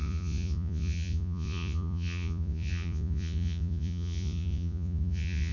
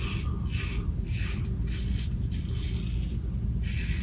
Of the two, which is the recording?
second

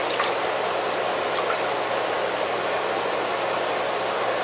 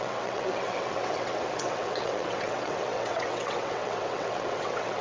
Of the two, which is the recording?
first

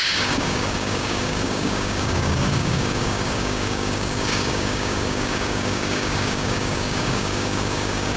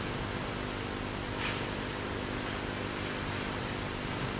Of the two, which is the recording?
second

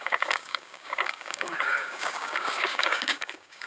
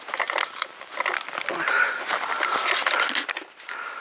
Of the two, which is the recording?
second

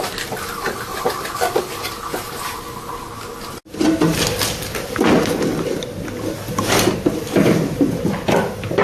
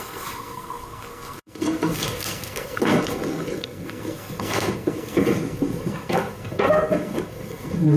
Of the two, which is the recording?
first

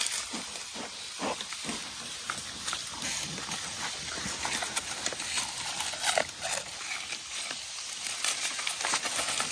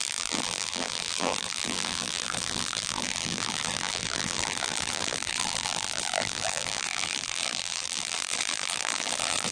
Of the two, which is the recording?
first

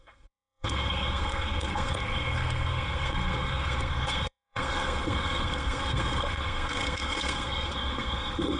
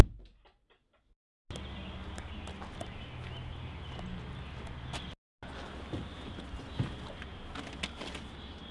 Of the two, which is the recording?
second